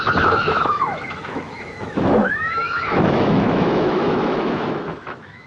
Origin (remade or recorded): remade